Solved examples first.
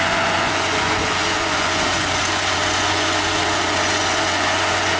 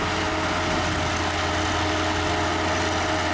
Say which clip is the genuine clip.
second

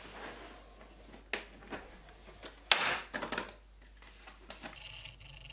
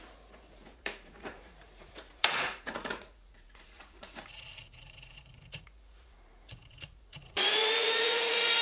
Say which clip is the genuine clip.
first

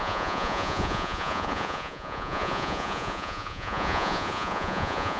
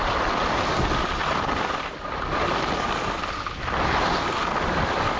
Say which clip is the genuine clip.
second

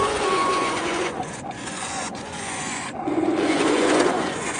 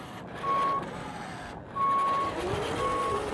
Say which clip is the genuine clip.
second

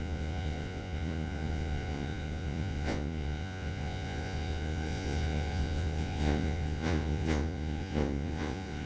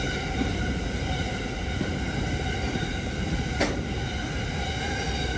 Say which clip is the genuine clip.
second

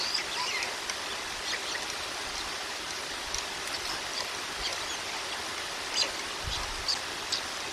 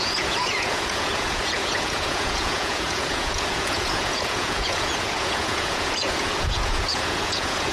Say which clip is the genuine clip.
first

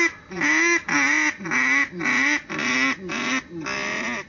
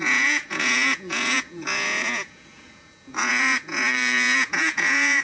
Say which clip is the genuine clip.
first